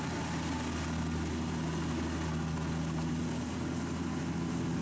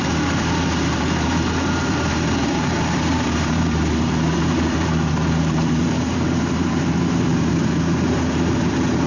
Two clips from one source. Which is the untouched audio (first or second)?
first